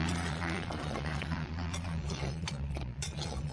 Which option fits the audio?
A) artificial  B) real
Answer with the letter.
A